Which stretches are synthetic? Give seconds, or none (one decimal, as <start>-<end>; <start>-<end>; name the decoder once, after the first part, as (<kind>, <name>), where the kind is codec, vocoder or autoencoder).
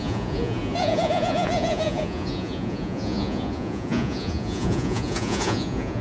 0.0-6.0 (vocoder, Vocos)